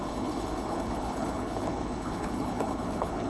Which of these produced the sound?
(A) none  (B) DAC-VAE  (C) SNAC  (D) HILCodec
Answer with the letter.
D